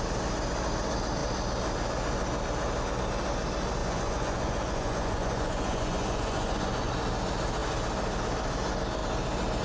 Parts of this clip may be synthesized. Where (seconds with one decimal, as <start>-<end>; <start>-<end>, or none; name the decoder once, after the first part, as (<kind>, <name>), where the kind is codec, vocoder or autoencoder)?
3.8-6.9 (vocoder, Vocos)